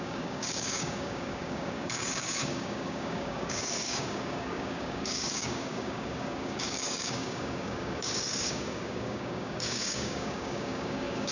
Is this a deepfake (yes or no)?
yes